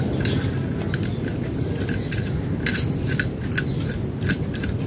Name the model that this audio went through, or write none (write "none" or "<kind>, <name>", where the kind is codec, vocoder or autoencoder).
none